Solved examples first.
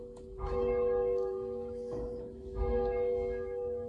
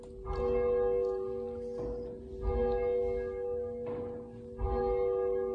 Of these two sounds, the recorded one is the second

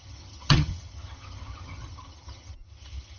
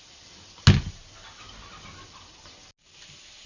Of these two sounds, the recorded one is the second